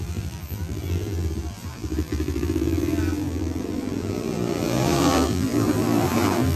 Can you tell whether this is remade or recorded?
remade